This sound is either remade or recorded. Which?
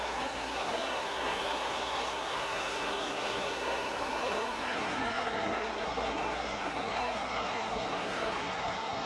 remade